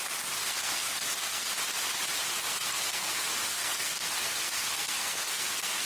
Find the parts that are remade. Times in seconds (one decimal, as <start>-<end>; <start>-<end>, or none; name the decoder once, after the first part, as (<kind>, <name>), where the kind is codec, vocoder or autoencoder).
0.4-1.5 (codec, SNAC); 2.3-5.9